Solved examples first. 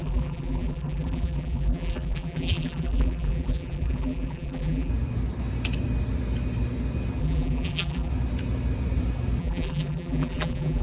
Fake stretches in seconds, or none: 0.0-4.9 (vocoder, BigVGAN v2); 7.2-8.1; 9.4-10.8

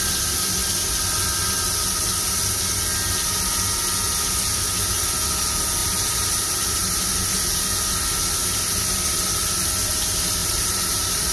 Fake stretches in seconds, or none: 5.8-7.1 (vocoder, BigVGAN v2); 10.4-11.3

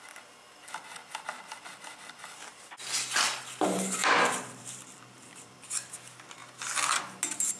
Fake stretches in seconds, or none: 4.0-5.9 (vocoder, BigVGAN v2)

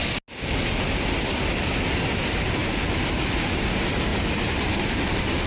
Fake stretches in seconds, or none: 2.6-3.2 (vocoder, BigVGAN v2); 4.1-5.5